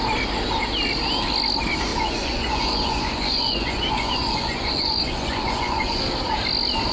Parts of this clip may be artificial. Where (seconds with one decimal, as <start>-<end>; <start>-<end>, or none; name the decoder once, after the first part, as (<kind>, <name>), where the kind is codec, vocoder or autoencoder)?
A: 1.9-6.0 (vocoder, Vocos)